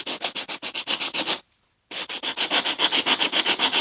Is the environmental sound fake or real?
real